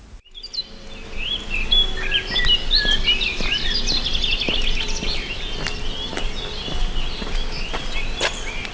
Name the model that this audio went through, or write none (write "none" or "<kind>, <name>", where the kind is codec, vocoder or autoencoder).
none